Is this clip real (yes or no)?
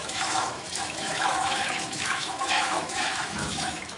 no